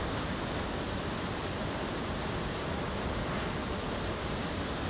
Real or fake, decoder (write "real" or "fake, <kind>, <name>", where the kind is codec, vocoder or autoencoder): real